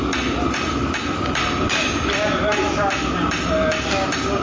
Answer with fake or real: real